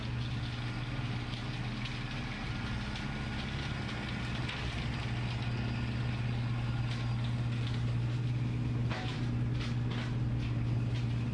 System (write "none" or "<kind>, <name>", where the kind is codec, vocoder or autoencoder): none